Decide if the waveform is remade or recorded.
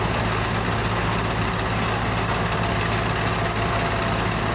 recorded